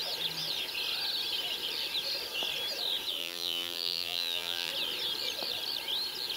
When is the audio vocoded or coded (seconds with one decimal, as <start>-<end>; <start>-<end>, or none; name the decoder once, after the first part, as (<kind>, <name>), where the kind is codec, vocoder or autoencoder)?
3.2-4.7 (vocoder, BigVGAN v2)